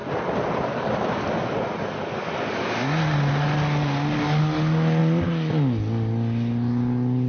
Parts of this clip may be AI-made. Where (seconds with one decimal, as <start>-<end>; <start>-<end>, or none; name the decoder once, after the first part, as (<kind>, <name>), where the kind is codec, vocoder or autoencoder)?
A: none